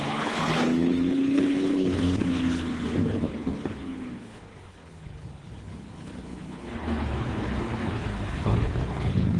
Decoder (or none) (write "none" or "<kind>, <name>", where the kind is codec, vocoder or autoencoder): codec, HILCodec